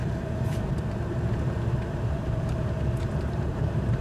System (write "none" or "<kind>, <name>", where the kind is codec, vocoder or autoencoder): vocoder, BigVGAN v2